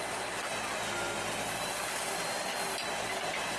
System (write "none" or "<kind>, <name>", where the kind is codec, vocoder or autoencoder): none